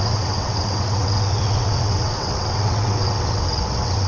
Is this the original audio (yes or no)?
no